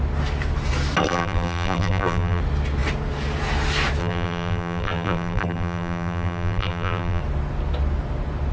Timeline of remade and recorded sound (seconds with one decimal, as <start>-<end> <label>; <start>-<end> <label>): 0.0-1.0 recorded; 1.0-2.4 remade; 2.4-4.0 recorded; 4.0-7.2 remade; 7.2-8.5 recorded